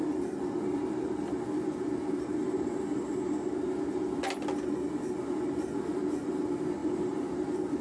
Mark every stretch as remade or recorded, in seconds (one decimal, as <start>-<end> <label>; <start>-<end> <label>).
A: 0.0-7.8 recorded